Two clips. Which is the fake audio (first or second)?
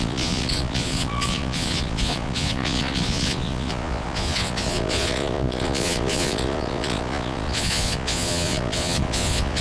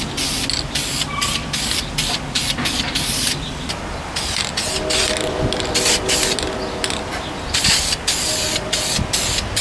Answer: first